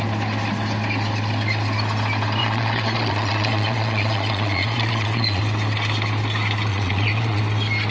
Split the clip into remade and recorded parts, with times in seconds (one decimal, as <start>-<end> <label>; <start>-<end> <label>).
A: 0.0-2.4 recorded; 2.4-5.4 remade; 5.4-6.7 recorded; 6.7-7.4 remade; 7.4-7.9 recorded